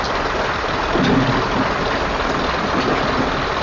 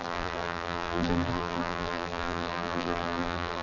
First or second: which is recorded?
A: first